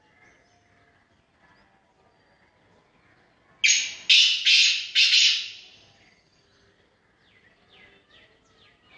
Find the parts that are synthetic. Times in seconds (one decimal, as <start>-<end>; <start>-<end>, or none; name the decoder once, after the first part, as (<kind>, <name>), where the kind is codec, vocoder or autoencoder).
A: none